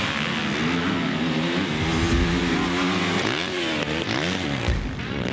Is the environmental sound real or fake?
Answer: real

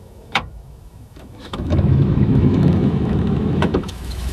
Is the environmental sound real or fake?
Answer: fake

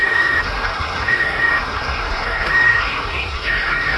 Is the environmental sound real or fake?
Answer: fake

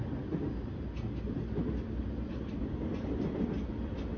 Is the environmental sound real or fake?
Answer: real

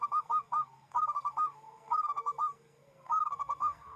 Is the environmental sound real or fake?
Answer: fake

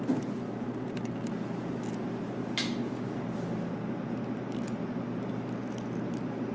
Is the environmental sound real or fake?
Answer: real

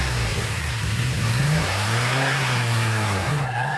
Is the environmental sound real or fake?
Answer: fake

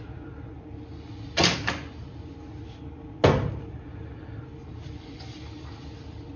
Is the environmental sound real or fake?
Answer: real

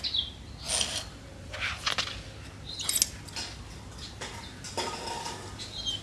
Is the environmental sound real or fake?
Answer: real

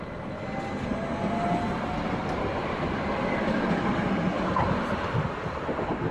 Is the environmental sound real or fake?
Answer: real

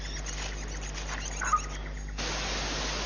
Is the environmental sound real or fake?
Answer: real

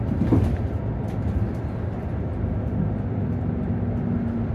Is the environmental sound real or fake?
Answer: real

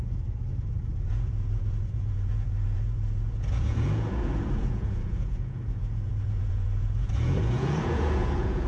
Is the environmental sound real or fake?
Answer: fake